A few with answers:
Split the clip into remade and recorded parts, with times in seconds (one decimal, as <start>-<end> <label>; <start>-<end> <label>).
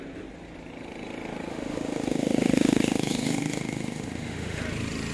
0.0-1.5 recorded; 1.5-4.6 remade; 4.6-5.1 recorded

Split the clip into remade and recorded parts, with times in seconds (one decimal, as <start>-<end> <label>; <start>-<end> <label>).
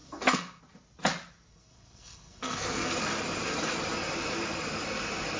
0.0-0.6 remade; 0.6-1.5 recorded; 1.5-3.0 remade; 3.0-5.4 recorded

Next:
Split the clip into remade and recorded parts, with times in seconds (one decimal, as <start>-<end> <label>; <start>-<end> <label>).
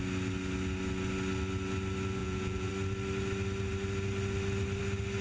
0.0-2.2 recorded; 2.2-2.7 remade; 2.7-5.2 recorded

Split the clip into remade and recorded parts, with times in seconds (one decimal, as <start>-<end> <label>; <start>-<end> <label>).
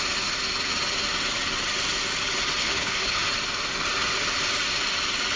0.0-2.6 recorded; 2.6-3.2 remade; 3.2-5.4 recorded